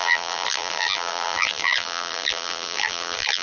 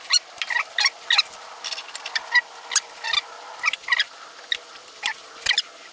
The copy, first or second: first